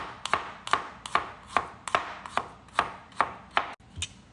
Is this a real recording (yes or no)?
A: yes